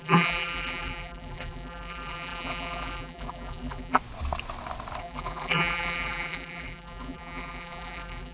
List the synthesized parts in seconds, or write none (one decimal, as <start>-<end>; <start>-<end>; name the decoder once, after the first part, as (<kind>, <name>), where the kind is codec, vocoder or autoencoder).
0.0-4.0 (vocoder, BigVGAN v2); 5.0-8.3